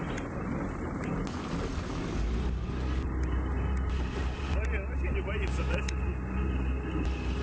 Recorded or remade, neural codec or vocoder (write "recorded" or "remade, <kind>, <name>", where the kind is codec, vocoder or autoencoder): recorded